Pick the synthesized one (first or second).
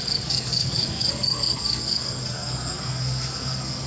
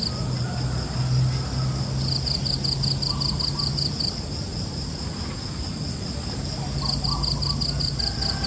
first